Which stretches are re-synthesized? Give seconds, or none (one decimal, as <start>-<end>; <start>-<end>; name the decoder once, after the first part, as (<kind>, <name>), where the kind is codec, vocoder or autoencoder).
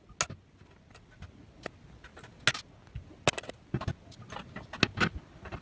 none